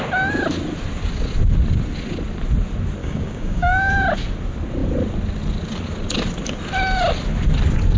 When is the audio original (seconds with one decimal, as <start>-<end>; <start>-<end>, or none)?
0.0-3.0; 3.9-8.0